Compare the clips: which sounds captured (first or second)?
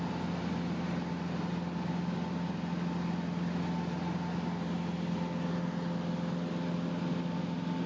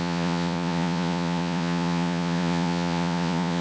first